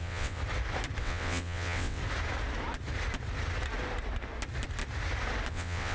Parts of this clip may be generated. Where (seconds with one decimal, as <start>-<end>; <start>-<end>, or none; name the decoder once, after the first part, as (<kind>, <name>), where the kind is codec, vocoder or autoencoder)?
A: 0.0-0.4 (vocoder, WaveNeXt); 1.0-2.0; 5.5-5.9